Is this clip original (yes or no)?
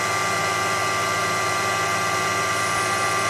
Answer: yes